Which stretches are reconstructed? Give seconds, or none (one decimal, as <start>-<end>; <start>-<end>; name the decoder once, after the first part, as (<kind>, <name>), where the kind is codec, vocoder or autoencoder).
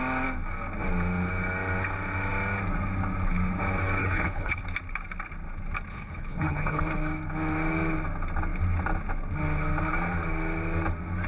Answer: 4.0-4.6 (codec, HILCodec); 5.9-6.8